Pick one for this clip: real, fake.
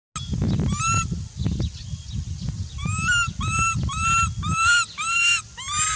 real